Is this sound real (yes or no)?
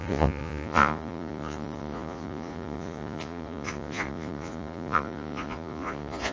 no